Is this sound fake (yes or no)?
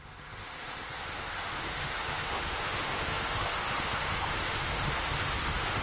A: yes